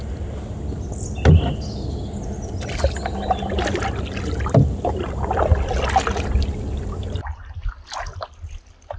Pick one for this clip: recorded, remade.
recorded